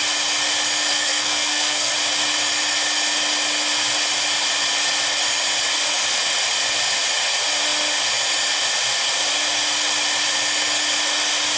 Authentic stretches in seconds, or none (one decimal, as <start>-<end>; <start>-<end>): 0.0-0.9; 1.9-11.6